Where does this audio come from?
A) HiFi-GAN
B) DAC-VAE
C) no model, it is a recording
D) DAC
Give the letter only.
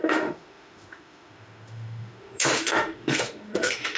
B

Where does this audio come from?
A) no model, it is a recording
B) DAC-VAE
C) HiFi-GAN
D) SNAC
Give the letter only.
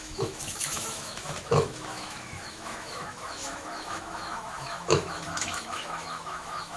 B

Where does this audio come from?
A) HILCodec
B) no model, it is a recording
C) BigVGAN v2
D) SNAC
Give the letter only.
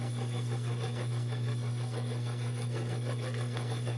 D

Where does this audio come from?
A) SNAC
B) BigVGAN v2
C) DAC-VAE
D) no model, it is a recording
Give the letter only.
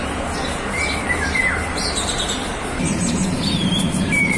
B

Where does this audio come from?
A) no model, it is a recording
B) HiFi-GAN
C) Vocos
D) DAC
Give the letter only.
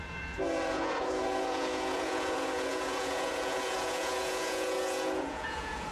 C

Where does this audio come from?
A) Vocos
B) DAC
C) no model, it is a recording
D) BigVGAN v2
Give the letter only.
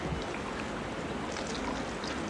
C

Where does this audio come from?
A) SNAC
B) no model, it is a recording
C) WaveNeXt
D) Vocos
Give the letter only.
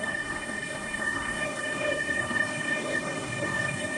A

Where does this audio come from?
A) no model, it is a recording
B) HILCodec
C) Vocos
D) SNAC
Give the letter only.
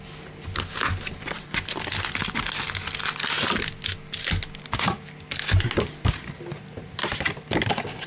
A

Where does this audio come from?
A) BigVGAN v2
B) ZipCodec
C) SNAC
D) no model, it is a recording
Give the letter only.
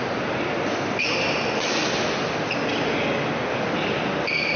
D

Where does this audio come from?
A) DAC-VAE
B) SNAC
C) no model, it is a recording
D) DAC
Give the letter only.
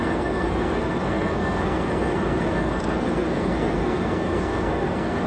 B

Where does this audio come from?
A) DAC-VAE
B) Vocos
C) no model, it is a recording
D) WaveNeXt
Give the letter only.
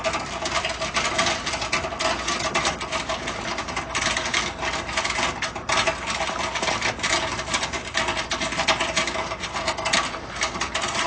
C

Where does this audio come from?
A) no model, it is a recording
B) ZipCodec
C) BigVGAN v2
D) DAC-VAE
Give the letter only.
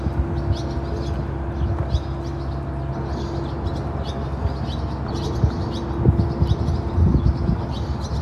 A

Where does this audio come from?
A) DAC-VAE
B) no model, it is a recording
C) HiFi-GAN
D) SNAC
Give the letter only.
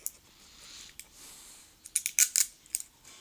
B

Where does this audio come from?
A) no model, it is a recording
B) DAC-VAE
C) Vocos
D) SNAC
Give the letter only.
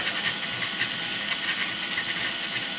A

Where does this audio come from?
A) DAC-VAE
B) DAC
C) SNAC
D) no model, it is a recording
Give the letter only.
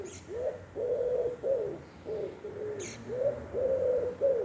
D